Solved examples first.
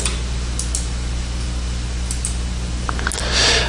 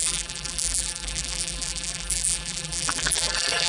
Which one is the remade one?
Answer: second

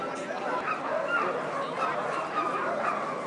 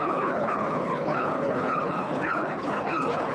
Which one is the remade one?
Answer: second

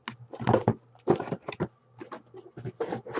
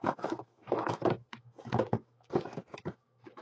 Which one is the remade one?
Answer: second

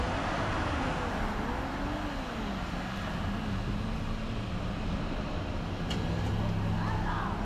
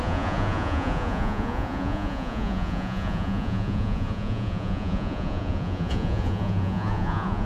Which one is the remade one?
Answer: second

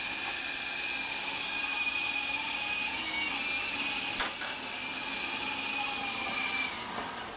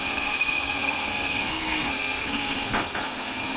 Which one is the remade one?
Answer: second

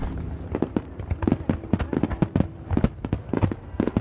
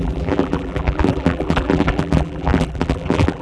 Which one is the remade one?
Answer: second